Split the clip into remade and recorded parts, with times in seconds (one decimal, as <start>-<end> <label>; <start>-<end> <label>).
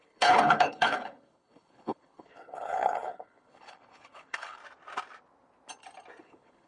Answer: 0.0-4.6 remade; 4.6-6.2 recorded; 6.2-6.7 remade